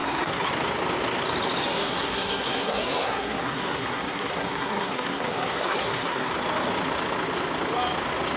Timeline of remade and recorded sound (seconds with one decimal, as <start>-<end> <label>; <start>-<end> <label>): 0.0-0.5 remade; 0.5-1.7 recorded; 1.7-6.3 remade; 6.3-8.4 recorded